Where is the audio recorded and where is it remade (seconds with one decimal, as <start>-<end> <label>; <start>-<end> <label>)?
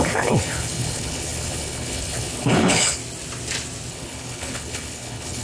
0.0-3.0 remade; 3.0-3.9 recorded; 3.9-5.4 remade